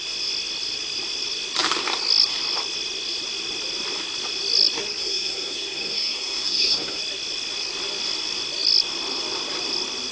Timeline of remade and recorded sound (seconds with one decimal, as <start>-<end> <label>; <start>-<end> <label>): 0.0-5.0 recorded; 5.0-7.0 remade; 7.0-10.1 recorded